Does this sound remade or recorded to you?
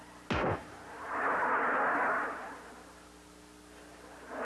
recorded